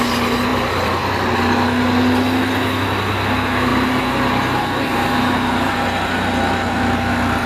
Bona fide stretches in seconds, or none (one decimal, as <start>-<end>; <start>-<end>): 0.0-0.5; 1.1-7.5